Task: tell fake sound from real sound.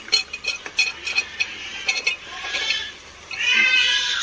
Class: real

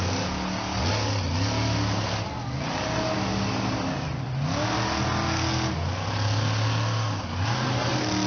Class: real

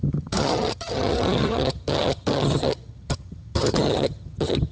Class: fake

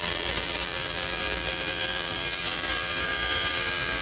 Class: fake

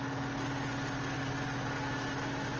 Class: real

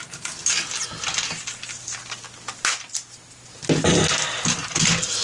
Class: real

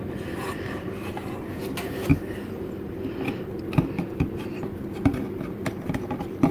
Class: real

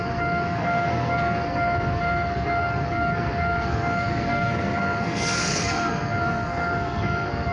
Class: fake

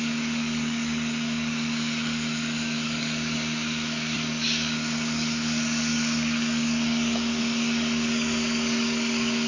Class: fake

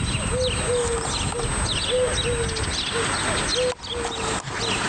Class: real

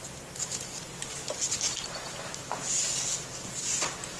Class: real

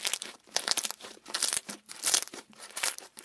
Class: fake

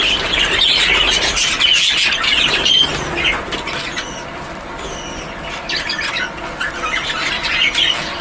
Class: real